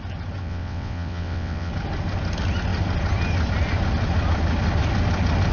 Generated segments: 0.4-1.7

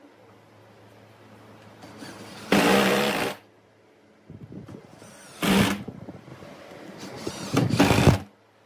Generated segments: none

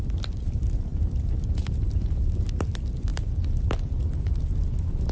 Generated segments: none